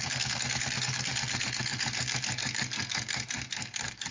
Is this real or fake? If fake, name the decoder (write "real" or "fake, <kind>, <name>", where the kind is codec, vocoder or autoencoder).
fake, codec, SNAC